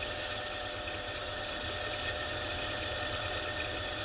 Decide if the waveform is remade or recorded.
recorded